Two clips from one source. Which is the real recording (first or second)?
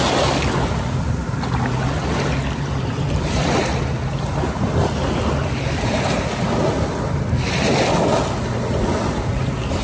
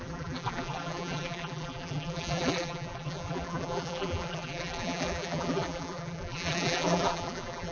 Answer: first